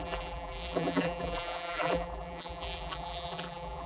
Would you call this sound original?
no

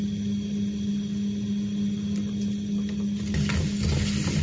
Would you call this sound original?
yes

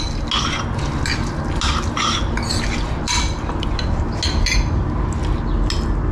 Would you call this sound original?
yes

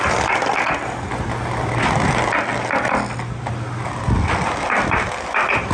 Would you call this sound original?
yes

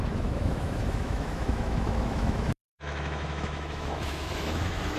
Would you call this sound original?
no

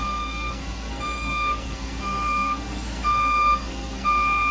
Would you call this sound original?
no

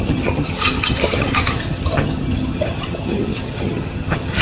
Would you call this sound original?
no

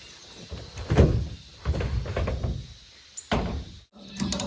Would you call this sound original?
yes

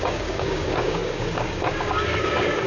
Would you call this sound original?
no